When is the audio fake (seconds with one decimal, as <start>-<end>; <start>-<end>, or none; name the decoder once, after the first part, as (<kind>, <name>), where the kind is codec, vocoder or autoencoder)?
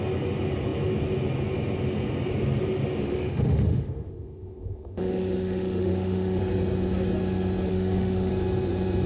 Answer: 3.0-6.4 (autoencoder, DAC-VAE); 7.7-8.3